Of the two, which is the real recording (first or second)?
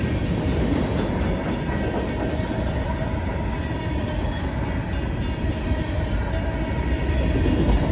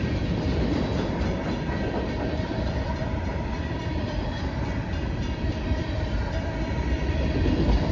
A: first